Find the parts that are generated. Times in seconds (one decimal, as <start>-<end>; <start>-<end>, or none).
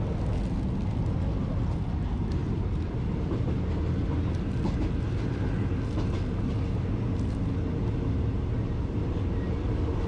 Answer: 2.4-3.5